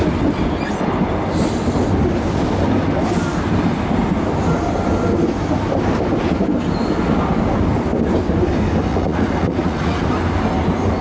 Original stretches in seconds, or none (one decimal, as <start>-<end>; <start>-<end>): 0.0-8.9; 10.0-11.0

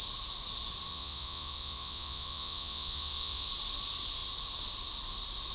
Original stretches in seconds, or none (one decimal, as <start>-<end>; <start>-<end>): 0.0-0.9; 3.5-5.5

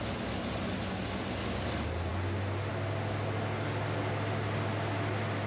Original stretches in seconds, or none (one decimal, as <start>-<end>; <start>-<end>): 0.0-5.5

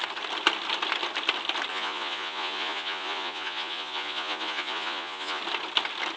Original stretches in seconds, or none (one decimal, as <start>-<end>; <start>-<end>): 0.0-1.7; 5.4-6.2